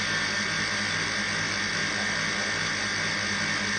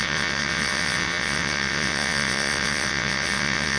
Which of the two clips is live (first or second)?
first